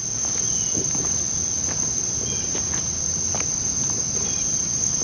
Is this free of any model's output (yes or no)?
yes